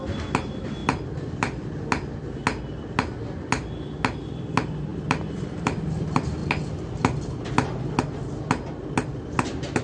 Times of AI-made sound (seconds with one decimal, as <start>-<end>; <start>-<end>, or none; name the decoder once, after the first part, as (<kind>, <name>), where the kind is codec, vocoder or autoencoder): 0.8-1.8 (vocoder, BigVGAN v2); 4.9-5.9